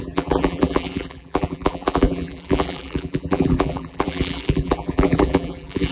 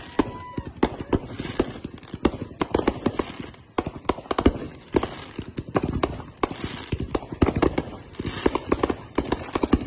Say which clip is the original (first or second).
second